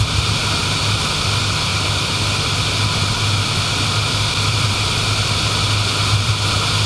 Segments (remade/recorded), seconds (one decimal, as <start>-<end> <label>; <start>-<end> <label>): 0.0-6.9 recorded